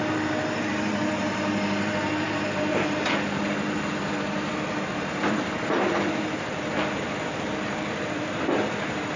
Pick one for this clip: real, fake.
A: fake